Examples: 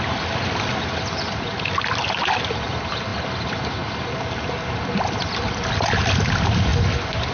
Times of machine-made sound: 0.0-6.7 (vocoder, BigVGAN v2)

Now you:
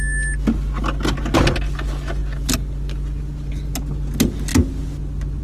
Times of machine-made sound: none